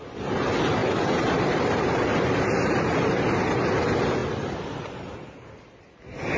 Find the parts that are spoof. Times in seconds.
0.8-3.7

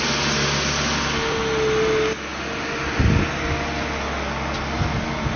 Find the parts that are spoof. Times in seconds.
none